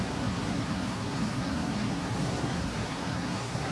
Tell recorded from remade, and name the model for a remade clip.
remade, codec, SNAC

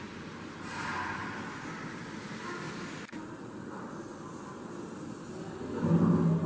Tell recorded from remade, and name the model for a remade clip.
recorded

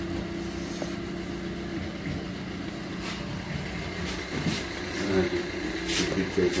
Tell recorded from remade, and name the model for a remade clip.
recorded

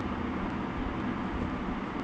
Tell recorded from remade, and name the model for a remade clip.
recorded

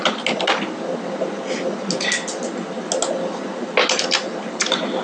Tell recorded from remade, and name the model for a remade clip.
recorded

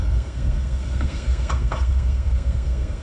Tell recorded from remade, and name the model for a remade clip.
remade, codec, SNAC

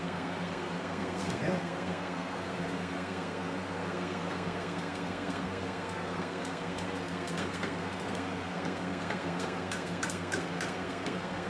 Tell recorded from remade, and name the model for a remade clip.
remade, codec, SNAC